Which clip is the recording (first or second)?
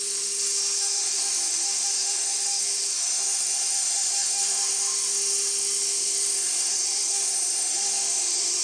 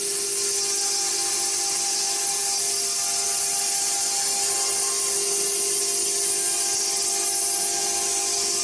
second